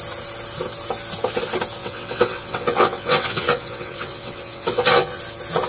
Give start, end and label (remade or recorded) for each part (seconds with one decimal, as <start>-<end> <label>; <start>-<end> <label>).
0.0-1.8 recorded; 1.8-5.2 remade; 5.2-5.7 recorded